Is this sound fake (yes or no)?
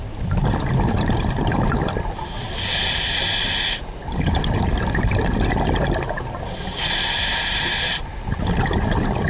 no